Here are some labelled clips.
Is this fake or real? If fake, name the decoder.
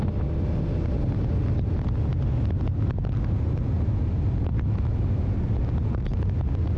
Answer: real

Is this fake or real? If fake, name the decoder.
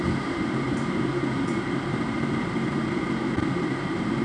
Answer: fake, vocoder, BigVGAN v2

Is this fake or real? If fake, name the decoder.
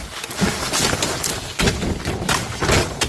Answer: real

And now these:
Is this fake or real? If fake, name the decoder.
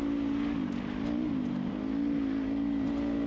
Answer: real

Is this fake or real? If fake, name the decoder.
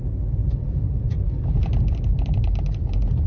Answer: real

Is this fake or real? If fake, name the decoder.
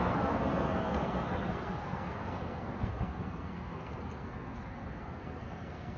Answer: fake, codec, SNAC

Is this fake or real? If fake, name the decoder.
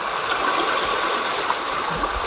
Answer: real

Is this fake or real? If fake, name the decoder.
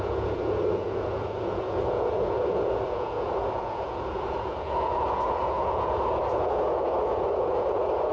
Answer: fake, vocoder, Vocos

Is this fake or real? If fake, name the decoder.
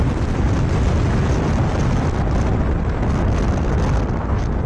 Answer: real